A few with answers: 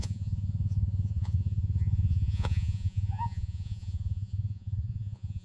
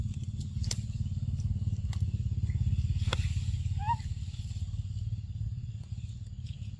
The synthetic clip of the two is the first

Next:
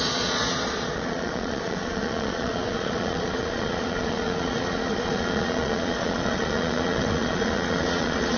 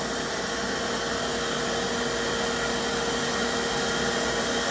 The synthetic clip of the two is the first